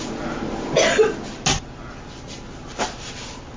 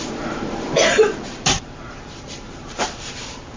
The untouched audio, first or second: first